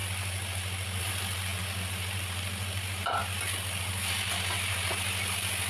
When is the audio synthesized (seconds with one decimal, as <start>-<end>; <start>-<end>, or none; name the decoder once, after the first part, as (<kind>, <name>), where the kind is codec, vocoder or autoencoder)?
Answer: none